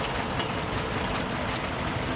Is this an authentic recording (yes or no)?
yes